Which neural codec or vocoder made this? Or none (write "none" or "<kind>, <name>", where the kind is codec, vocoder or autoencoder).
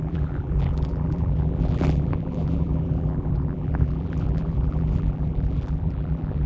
vocoder, BigVGAN v2